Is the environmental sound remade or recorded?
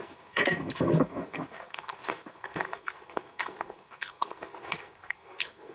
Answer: remade